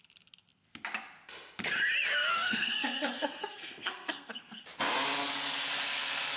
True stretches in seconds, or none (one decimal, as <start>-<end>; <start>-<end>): 0.0-2.3; 4.6-6.4